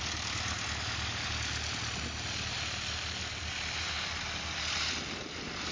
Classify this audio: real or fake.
real